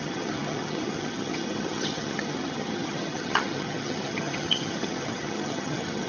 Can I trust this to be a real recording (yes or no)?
no